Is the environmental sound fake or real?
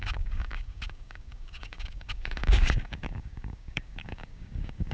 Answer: fake